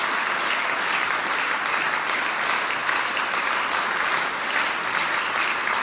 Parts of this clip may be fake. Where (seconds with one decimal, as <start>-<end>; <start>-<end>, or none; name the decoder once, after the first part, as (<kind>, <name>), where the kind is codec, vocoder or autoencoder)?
none